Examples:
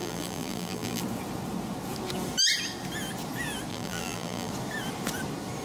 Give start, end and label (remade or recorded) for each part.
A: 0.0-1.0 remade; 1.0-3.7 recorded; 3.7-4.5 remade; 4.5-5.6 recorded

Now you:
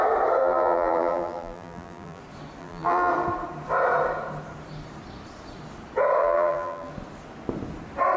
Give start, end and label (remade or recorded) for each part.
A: 0.0-0.4 recorded; 0.4-2.2 remade; 2.2-2.6 recorded; 2.6-3.1 remade; 3.1-6.2 recorded; 6.2-6.9 remade; 6.9-8.2 recorded

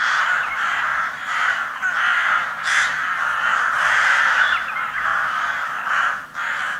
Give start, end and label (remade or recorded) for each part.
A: 0.0-0.9 remade; 0.9-3.7 recorded; 3.7-5.1 remade; 5.1-6.8 recorded

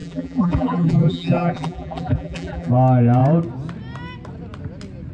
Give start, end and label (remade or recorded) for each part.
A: 0.0-2.7 remade; 2.7-5.1 recorded